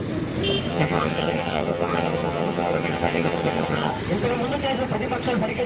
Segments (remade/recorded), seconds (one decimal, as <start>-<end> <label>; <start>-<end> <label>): 0.0-0.7 recorded; 0.7-3.9 remade; 3.9-5.7 recorded